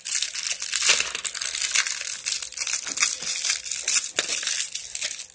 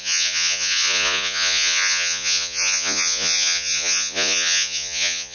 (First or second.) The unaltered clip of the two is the first